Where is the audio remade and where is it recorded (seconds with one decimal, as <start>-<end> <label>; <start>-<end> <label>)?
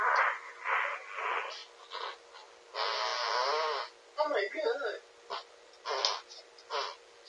0.0-7.3 recorded